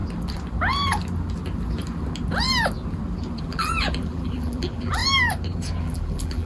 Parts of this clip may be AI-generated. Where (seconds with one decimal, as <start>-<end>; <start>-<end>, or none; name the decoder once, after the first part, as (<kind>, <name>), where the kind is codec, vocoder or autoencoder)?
3.4-5.0 (vocoder, BigVGAN v2); 5.8-6.5

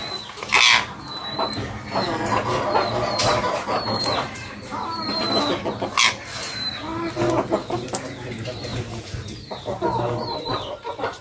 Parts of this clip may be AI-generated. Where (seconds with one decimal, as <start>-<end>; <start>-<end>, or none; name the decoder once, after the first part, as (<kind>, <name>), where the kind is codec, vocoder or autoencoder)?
3.3-5.2 (vocoder, BigVGAN v2); 8.7-11.2

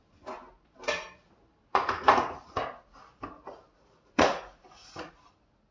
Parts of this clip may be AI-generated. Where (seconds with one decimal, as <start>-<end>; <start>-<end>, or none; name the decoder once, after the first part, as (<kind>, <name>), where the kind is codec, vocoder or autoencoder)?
1.7-2.8 (vocoder, Vocos); 3.7-5.1

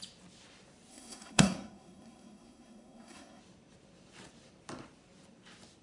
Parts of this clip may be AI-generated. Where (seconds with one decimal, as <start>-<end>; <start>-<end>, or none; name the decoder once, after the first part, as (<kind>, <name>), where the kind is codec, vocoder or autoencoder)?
0.9-3.4 (codec, SNAC)

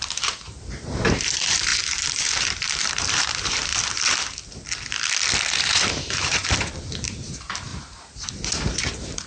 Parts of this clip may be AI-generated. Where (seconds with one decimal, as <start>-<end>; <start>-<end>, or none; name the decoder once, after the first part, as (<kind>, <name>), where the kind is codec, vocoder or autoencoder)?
0.0-3.7 (vocoder, BigVGAN v2); 5.4-6.4; 7.0-9.3